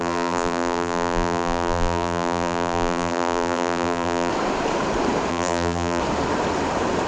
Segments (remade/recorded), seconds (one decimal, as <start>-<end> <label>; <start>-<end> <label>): 0.0-4.3 remade; 4.3-5.3 recorded; 5.3-6.0 remade; 6.0-7.1 recorded